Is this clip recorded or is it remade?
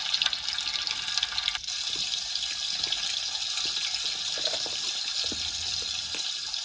recorded